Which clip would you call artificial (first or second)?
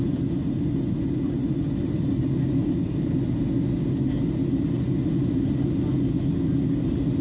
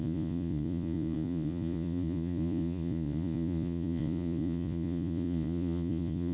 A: second